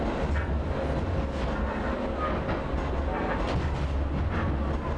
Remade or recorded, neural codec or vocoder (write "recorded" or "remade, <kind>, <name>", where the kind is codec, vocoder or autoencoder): recorded